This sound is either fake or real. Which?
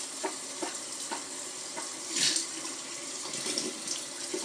real